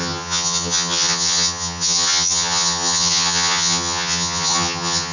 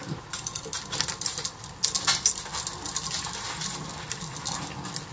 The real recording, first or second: second